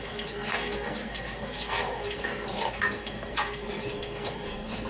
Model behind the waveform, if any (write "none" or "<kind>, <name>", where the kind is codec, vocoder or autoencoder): codec, SNAC